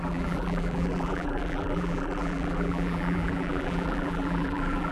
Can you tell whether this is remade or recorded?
remade